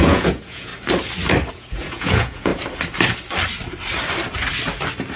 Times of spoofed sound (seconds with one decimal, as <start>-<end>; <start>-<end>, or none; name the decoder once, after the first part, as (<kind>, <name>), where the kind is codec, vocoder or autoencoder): 0.0-0.7 (vocoder, Vocos); 1.5-2.5